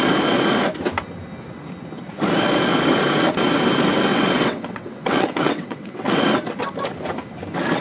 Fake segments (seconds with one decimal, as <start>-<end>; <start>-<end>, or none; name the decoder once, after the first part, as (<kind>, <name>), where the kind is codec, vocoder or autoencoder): 4.1-6.2 (vocoder, WaveNeXt)